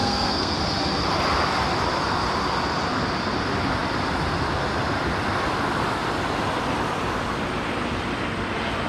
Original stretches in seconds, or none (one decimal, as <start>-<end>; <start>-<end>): 0.6-8.9